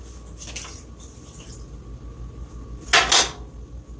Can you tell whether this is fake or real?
real